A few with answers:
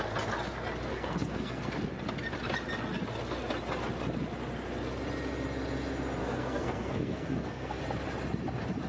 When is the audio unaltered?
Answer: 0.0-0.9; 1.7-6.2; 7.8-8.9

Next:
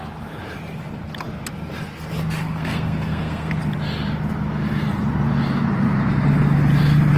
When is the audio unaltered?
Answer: 0.0-2.4; 3.5-7.2

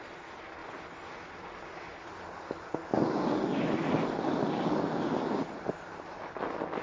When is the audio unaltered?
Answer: 0.0-6.8